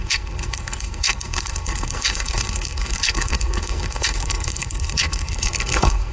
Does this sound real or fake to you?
fake